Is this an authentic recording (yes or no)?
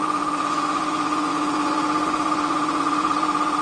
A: no